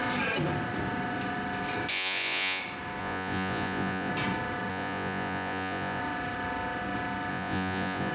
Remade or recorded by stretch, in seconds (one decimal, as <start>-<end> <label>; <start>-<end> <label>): 0.0-1.9 recorded; 1.9-2.6 remade; 2.6-3.0 recorded; 3.0-4.1 remade; 4.1-4.7 recorded; 4.7-6.0 remade; 6.0-7.3 recorded; 7.3-8.1 remade